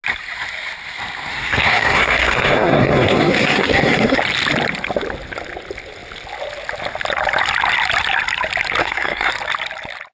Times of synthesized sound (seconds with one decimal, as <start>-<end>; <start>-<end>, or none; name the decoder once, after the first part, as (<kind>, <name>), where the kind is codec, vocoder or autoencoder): 1.3-4.2 (codec, SNAC); 8.8-9.3